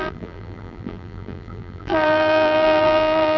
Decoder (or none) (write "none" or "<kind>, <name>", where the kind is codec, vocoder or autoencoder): vocoder, BigVGAN v2